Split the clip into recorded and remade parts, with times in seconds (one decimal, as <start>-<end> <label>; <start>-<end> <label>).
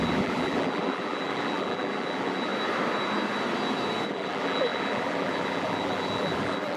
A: 0.0-2.5 remade; 2.5-4.1 recorded; 4.1-6.8 remade